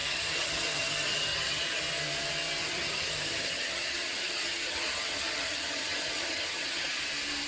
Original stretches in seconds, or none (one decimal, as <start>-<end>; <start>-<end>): 1.8-2.6; 7.0-7.5